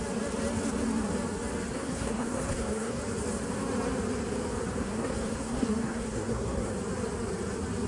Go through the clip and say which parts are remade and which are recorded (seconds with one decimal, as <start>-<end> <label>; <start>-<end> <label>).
0.0-1.7 recorded; 1.7-3.0 remade; 3.0-4.8 recorded; 4.8-6.7 remade; 6.7-7.9 recorded